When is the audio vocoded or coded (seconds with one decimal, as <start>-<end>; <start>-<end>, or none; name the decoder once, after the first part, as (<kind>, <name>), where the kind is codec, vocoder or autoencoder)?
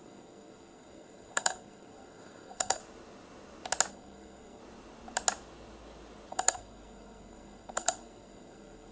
0.0-2.8 (codec, SNAC); 3.9-4.6; 6.3-8.9